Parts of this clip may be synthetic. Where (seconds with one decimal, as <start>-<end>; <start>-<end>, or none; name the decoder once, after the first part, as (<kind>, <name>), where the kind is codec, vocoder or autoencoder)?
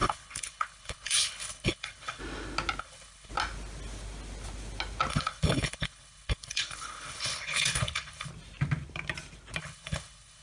0.0-2.2 (codec, HILCodec); 2.8-3.3; 5.1-8.3; 9.6-10.4